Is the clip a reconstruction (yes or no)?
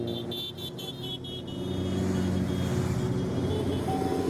no